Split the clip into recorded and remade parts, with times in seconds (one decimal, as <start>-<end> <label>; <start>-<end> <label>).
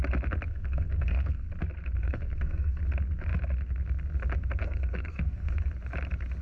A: 0.0-0.5 recorded; 0.5-1.5 remade; 1.5-2.0 recorded; 2.0-2.8 remade; 2.8-4.6 recorded; 4.6-5.7 remade; 5.7-6.4 recorded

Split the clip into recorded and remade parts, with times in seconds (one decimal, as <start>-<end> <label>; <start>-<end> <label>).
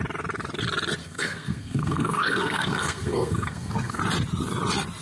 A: 0.0-1.0 recorded; 1.0-4.0 remade; 4.0-5.0 recorded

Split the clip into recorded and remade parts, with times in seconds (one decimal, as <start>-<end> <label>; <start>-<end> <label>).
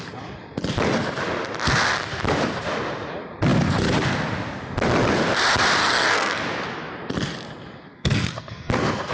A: 0.0-5.8 recorded; 5.8-6.4 remade; 6.4-7.9 recorded; 7.9-9.1 remade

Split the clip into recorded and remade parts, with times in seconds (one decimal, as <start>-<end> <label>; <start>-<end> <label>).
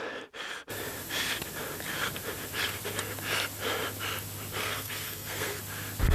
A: 0.0-4.6 recorded; 4.6-5.6 remade; 5.6-6.1 recorded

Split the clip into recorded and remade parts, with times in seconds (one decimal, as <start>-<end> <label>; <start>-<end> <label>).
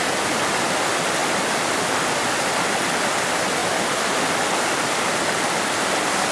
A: 0.0-6.3 recorded